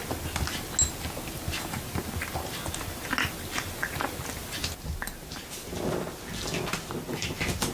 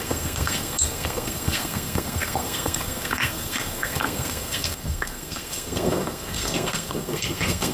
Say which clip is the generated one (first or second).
second